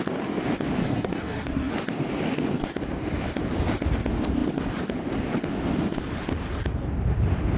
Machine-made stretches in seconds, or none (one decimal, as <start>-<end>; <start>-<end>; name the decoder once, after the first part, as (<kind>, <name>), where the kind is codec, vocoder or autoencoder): 0.8-1.7 (codec, SNAC)